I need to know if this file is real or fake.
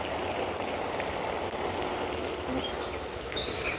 real